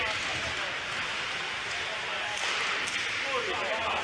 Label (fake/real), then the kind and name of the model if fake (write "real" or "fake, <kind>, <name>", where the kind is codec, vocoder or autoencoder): real